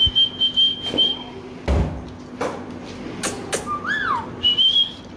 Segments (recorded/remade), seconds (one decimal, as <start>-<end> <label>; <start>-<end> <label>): 0.0-5.2 recorded